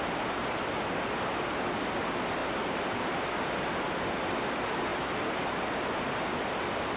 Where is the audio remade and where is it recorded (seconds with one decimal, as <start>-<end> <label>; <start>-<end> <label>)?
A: 0.0-7.0 recorded